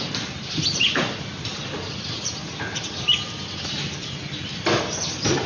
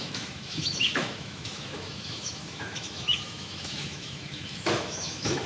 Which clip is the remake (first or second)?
second